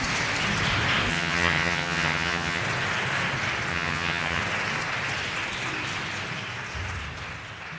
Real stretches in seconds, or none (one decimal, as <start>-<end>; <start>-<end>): 0.0-1.1; 2.6-3.7; 4.4-7.8